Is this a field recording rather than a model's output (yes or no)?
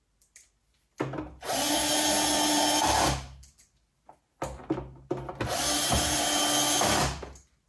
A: yes